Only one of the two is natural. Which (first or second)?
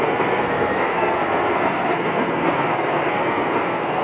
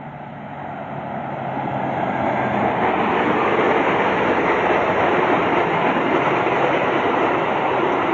second